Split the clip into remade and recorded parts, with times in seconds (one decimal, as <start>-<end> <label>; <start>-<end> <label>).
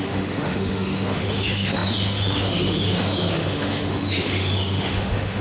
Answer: 0.0-5.4 remade